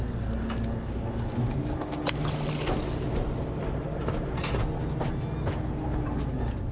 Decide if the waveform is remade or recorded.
recorded